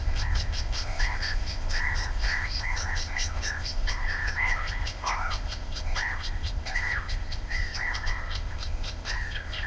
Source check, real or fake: fake